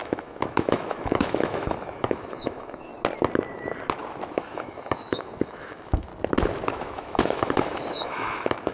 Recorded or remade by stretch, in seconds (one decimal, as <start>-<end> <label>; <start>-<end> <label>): 0.0-2.9 remade; 2.9-4.3 recorded; 4.3-6.1 remade; 6.1-6.7 recorded; 6.7-8.7 remade

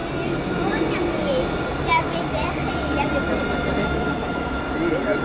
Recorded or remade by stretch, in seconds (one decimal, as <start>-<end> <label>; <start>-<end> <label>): 0.0-3.8 recorded; 3.8-4.6 remade; 4.6-5.2 recorded